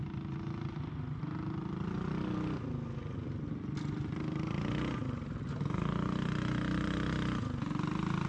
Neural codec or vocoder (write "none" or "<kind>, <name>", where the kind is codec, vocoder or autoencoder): none